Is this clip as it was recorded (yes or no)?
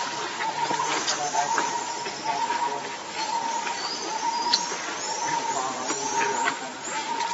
yes